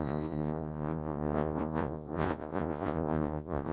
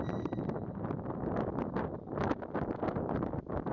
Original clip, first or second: second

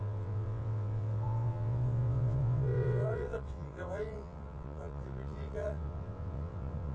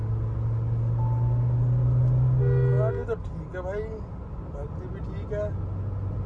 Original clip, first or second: second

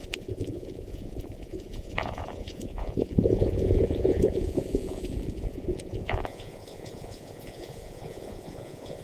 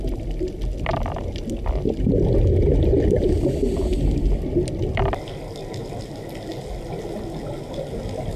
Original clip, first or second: second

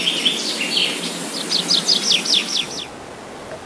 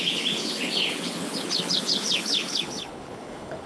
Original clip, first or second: first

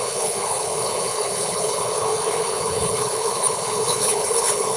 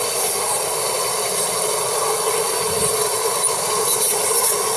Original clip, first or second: second